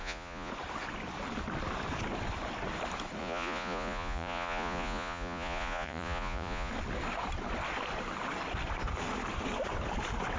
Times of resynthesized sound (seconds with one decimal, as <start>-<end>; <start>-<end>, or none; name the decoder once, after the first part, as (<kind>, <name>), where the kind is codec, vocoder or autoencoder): 0.0-0.5 (vocoder, Vocos); 3.2-6.7